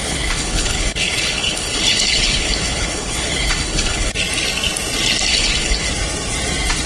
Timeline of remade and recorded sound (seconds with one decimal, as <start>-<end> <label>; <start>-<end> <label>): 0.0-4.1 remade; 4.1-5.3 recorded; 5.3-5.9 remade; 5.9-6.9 recorded